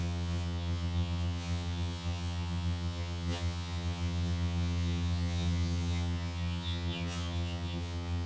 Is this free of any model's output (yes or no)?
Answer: no